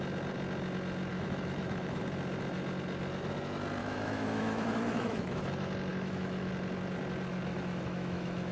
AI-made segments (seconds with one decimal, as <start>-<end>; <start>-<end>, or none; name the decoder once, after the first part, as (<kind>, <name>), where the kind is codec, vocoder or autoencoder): 1.1-2.0 (autoencoder, DAC-VAE); 3.8-5.4; 5.9-6.5; 7.5-8.5